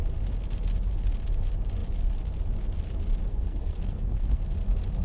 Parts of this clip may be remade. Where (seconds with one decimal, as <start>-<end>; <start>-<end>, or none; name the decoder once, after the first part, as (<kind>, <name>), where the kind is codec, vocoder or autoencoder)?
3.3-4.4 (codec, SNAC)